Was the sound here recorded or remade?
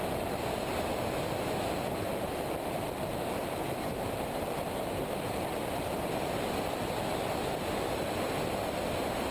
recorded